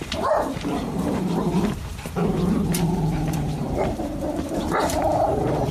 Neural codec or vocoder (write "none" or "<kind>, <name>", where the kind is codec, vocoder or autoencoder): vocoder, BigVGAN v2